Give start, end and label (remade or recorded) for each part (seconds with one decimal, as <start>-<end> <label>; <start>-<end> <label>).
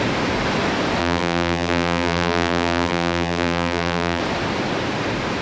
0.0-1.0 recorded; 1.0-4.2 remade; 4.2-5.4 recorded